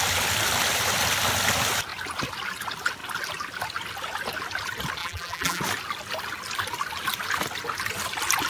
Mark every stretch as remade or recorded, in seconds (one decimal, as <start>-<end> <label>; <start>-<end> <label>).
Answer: 0.0-5.0 recorded; 5.0-5.6 remade; 5.6-8.5 recorded